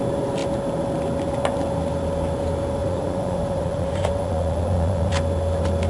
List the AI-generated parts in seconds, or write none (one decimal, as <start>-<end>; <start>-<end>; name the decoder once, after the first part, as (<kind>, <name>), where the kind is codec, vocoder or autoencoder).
2.8-5.1 (vocoder, Vocos)